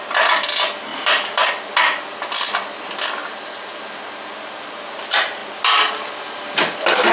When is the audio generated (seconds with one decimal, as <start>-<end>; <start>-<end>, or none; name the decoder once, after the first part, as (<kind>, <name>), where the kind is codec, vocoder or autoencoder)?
0.9-1.5 (vocoder, BigVGAN v2); 3.2-3.8